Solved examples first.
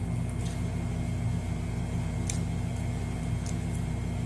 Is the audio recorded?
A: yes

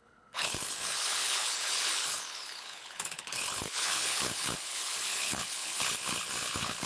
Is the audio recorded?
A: no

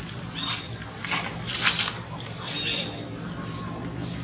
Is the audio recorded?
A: yes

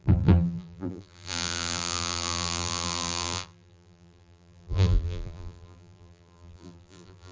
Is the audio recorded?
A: no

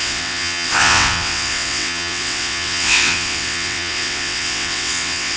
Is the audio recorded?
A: no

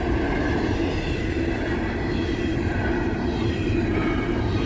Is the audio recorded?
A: no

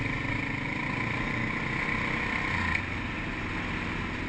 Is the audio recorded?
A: yes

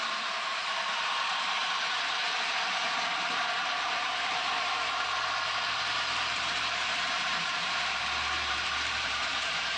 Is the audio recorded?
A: no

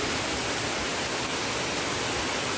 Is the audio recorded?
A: yes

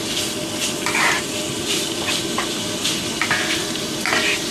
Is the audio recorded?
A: yes